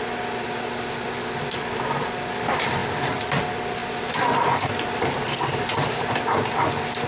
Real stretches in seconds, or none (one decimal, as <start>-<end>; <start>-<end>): 0.0-7.1